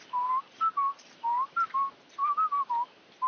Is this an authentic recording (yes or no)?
yes